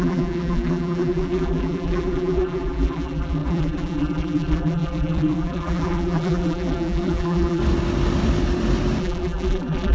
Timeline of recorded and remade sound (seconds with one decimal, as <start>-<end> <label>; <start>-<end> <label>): 0.0-7.6 remade; 7.6-9.0 recorded; 9.0-9.9 remade